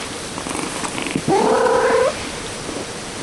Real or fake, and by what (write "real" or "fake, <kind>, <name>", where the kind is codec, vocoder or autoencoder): fake, vocoder, BigVGAN v2